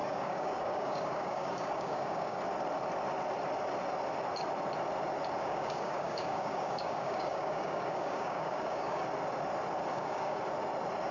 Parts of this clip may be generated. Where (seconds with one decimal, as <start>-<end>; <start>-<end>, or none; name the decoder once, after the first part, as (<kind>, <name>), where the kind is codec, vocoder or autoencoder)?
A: 0.0-2.4 (codec, DAC); 5.4-9.0; 9.9-10.4